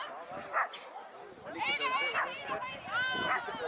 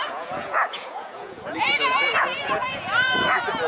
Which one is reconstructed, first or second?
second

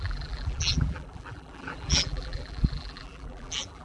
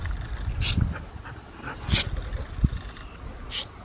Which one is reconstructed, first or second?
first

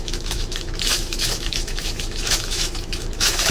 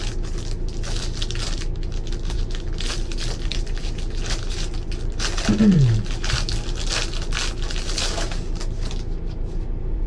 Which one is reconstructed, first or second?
first